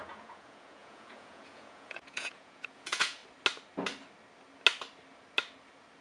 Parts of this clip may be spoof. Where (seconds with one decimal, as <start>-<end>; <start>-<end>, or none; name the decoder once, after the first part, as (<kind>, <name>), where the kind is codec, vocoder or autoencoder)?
0.0-3.2 (vocoder, Vocos)